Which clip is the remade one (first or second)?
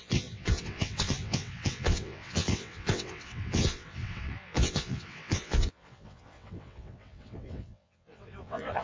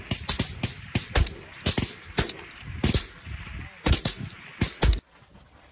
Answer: first